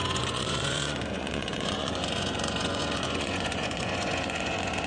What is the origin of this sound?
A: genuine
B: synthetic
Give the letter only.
B